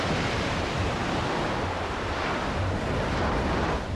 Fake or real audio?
real